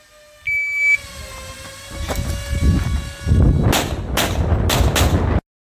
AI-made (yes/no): no